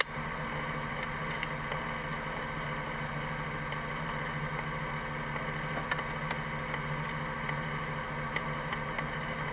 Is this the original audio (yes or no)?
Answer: yes